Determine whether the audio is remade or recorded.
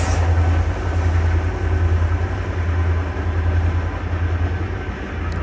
recorded